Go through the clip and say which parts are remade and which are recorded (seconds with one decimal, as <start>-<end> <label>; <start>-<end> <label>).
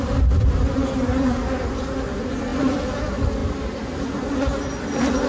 0.0-5.3 recorded